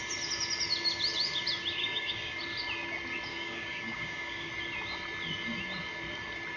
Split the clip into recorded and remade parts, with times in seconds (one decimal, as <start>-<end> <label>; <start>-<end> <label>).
0.0-1.8 recorded; 1.8-2.4 remade; 2.4-3.3 recorded; 3.3-4.5 remade; 4.5-6.6 recorded